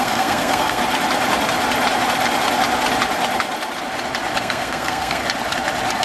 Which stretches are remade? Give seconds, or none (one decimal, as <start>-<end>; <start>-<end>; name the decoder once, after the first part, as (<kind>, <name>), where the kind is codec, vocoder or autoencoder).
0.0-0.8 (codec, SNAC); 4.4-5.2